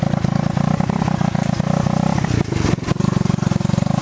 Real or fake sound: real